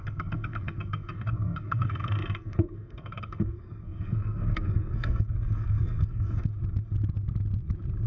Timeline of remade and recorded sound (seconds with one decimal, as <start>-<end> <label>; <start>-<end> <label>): 0.0-6.5 remade; 6.5-8.1 recorded